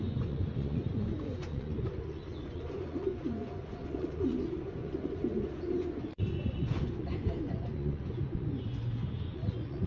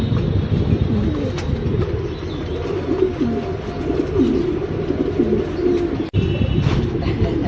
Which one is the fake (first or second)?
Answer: first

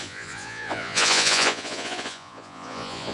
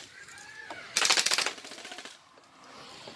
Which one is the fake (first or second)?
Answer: first